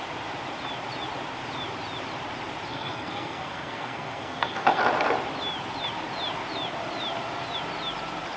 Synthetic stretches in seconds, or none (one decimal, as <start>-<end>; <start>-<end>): 2.7-4.8